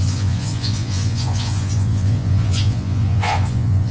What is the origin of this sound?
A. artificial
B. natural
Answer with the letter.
A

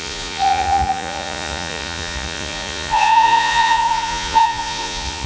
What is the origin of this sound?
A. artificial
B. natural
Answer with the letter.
A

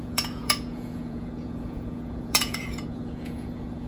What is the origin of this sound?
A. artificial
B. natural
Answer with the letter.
A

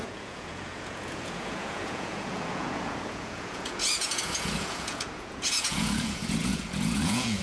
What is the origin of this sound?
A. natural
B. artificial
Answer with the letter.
B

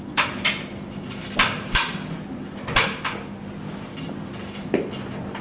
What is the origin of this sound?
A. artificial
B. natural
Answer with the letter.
B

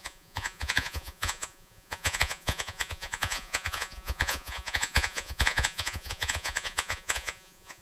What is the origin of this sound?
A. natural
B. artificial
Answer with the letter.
B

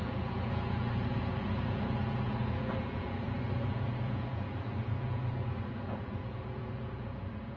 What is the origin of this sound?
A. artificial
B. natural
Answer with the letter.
A